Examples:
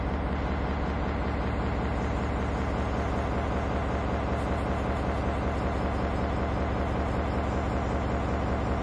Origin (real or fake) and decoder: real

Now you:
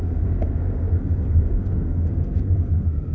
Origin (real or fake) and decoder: fake, codec, SNAC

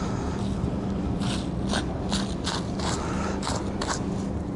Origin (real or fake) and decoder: real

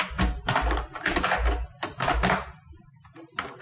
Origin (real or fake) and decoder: real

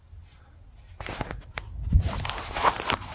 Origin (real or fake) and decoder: real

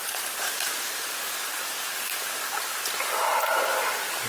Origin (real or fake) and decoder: real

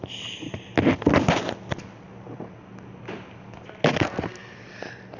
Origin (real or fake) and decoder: real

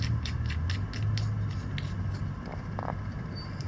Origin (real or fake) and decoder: real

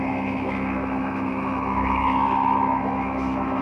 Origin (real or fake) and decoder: fake, autoencoder, DAC-VAE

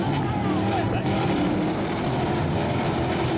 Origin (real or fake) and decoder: real